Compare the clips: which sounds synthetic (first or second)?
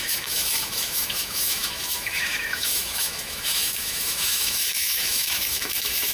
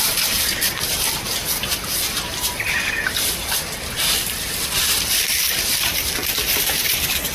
first